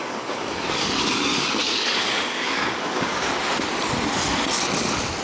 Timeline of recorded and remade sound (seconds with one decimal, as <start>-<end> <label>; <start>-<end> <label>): 0.0-3.1 remade; 3.1-5.2 recorded